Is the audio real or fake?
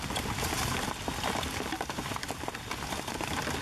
real